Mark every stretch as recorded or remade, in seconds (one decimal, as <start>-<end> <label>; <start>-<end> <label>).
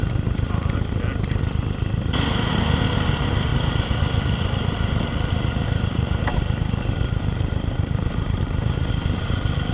0.0-3.5 recorded; 3.5-8.4 remade; 8.4-9.7 recorded